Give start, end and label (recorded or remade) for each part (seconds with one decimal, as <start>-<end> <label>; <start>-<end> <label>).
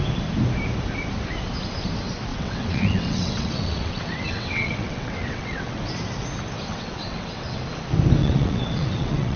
0.0-2.3 recorded; 2.3-5.8 remade; 5.8-6.7 recorded; 6.7-7.6 remade; 7.6-8.2 recorded; 8.2-9.4 remade